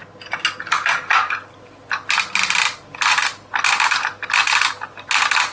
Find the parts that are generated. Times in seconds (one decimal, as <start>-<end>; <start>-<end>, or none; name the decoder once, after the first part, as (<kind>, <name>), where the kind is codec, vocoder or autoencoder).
none

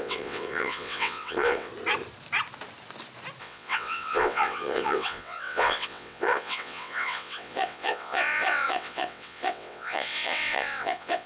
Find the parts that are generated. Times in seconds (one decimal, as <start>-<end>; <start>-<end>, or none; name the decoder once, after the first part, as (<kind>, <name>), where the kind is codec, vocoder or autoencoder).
0.0-1.7 (vocoder, WaveNeXt); 3.4-11.3

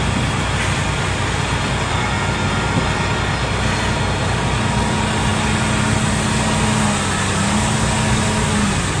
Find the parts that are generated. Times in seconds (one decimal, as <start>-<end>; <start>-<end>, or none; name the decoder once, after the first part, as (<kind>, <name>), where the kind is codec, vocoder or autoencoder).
none

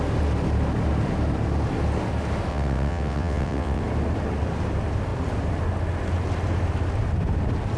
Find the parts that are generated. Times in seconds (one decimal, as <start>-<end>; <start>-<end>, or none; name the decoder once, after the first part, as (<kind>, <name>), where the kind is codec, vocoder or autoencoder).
2.5-3.8 (vocoder, WaveNeXt)